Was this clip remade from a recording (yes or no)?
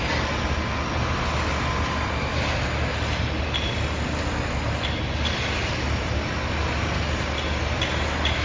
no